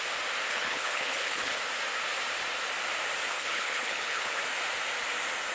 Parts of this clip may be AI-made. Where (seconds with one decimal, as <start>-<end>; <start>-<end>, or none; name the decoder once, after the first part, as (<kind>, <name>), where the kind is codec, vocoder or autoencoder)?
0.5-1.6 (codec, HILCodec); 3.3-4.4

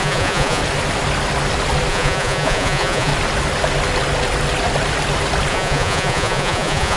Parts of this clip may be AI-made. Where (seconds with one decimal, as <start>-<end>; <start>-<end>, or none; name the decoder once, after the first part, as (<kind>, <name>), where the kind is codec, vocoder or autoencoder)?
0.0-0.6 (vocoder, Vocos); 1.9-3.1; 5.5-7.0

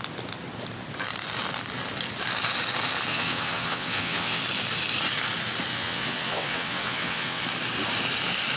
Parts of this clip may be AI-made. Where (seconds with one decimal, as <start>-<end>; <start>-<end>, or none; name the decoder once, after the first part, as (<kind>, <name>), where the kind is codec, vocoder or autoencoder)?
3.1-4.4 (vocoder, WaveNeXt); 5.7-7.4

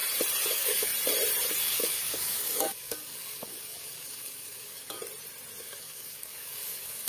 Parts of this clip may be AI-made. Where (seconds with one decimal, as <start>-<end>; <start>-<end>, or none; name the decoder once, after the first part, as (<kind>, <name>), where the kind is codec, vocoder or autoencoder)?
0.5-0.9 (codec, DAC); 1.6-5.0; 5.6-7.1

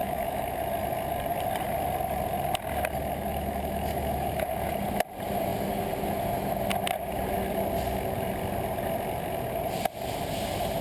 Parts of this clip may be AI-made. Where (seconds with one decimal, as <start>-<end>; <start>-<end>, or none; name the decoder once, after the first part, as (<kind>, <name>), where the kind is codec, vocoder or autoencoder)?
0.0-0.6 (autoencoder, DAC-VAE); 3.3-4.5

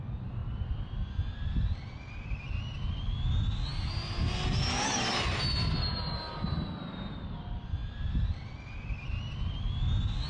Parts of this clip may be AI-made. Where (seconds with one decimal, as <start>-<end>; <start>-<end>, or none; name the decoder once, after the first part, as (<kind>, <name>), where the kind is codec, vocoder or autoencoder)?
none

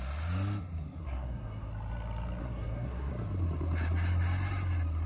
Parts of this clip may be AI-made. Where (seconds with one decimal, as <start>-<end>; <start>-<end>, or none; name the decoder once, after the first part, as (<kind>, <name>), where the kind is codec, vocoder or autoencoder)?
1.0-1.7 (codec, SNAC); 2.4-3.1

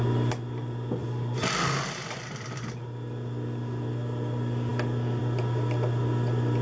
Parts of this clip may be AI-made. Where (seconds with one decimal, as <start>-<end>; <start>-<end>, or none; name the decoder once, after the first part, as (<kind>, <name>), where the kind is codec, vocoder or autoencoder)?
1.0-2.7 (vocoder, BigVGAN v2)